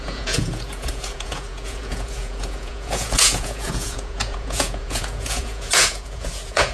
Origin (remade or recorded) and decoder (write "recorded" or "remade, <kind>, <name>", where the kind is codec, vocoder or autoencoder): remade, vocoder, Vocos